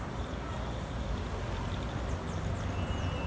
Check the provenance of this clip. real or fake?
real